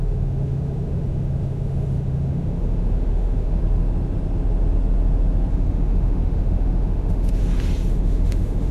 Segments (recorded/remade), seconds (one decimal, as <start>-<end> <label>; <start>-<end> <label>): 0.0-3.6 remade; 3.6-5.5 recorded; 5.5-7.4 remade; 7.4-7.9 recorded; 7.9-8.7 remade

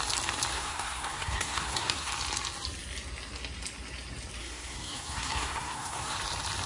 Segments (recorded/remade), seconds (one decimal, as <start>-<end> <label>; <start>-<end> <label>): 0.0-0.5 recorded; 0.5-2.1 remade; 2.1-4.4 recorded; 4.4-6.2 remade; 6.2-6.7 recorded

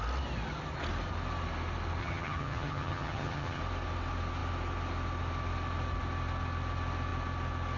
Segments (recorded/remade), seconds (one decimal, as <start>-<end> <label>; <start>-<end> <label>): 0.0-2.0 recorded; 2.0-3.6 remade; 3.6-7.8 recorded

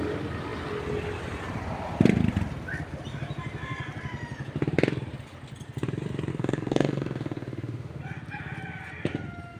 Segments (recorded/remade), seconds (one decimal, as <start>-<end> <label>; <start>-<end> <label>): 0.0-6.3 recorded; 6.3-8.0 remade; 8.0-9.6 recorded

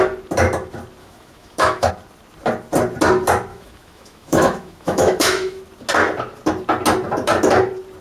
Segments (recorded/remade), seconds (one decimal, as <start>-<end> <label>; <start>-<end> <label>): 0.0-1.0 recorded; 1.0-1.9 remade; 1.9-3.5 recorded; 3.5-5.6 remade; 5.6-8.0 recorded

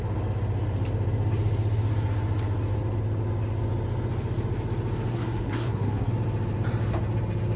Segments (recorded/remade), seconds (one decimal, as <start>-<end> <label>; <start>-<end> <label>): 0.0-5.1 recorded; 5.1-6.1 remade; 6.1-7.6 recorded

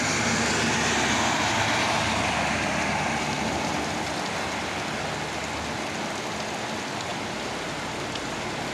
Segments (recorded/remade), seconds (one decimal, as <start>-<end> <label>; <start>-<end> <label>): 0.0-8.7 recorded

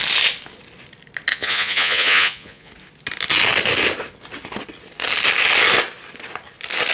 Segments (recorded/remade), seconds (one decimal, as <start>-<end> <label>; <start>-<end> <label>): 0.0-1.3 recorded; 1.3-2.7 remade; 2.7-6.9 recorded